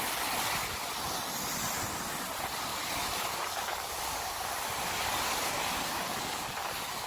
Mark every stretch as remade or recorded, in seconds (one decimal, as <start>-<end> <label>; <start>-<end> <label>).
0.0-2.7 recorded; 2.7-7.1 remade